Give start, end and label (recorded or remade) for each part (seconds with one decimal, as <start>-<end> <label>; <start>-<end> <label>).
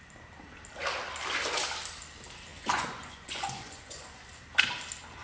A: 0.0-2.5 recorded; 2.5-4.3 remade; 4.3-5.2 recorded